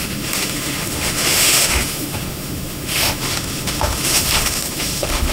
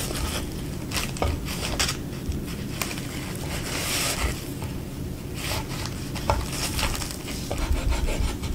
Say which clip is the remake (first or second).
first